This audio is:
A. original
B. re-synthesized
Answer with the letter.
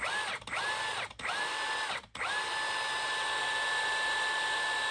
A